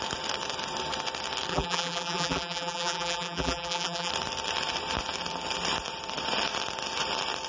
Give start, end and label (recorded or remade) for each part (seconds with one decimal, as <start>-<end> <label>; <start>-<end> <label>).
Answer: 0.0-1.5 recorded; 1.5-4.1 remade; 4.1-7.5 recorded